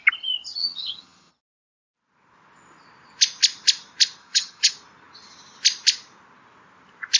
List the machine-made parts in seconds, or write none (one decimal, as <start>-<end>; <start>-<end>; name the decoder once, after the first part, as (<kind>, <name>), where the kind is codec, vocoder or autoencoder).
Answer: 0.6-1.3 (vocoder, HiFi-GAN); 4.2-4.7